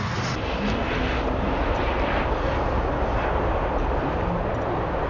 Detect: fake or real real